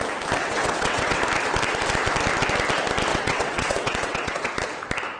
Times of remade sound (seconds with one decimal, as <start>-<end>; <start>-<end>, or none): 0.4-1.2; 3.1-4.5